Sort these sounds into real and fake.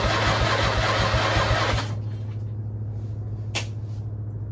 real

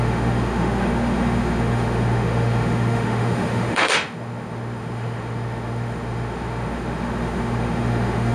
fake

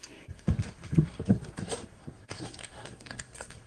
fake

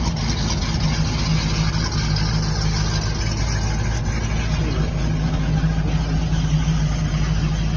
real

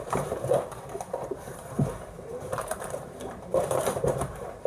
fake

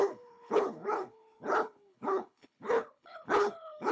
fake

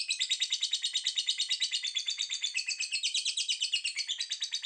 fake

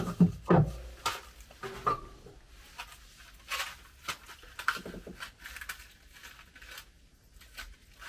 real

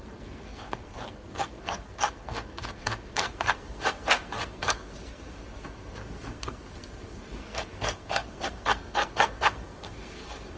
fake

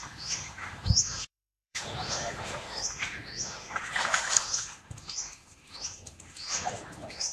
fake